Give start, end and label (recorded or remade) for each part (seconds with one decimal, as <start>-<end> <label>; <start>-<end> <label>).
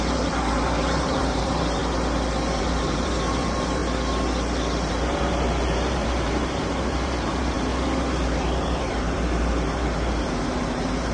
0.0-1.8 remade; 1.8-2.6 recorded; 2.6-3.8 remade; 3.8-4.9 recorded; 4.9-7.7 remade; 7.7-8.4 recorded; 8.4-11.1 remade